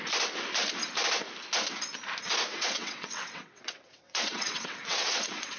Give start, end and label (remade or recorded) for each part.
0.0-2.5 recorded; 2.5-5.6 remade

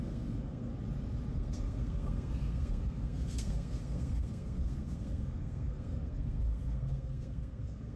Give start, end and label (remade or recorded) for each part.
0.0-0.7 remade; 0.7-1.3 recorded; 1.3-8.0 remade

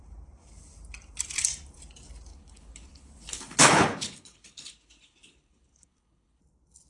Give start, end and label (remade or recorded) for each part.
0.0-2.3 recorded; 2.3-6.4 remade; 6.4-6.9 recorded

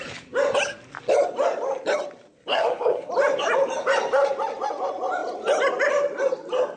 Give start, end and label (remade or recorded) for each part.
0.0-2.5 recorded; 2.5-3.1 remade; 3.1-6.8 recorded

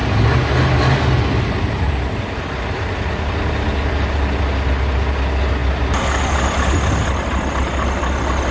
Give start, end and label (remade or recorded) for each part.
0.0-8.5 recorded

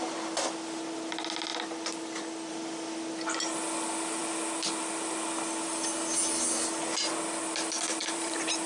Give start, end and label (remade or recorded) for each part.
0.0-8.0 recorded; 8.0-8.7 remade